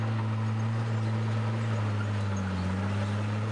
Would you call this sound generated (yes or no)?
no